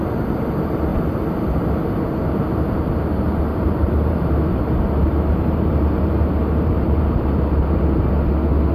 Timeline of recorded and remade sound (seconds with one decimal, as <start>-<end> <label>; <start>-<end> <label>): 0.0-3.5 recorded; 3.5-8.1 remade; 8.1-8.7 recorded